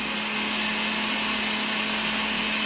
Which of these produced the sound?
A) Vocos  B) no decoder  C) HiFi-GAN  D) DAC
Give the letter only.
B